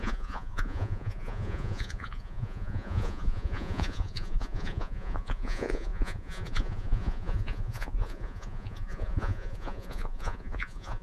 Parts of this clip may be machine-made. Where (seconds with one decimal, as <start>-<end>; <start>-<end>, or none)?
0.0-11.0